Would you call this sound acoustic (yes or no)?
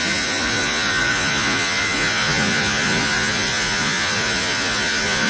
no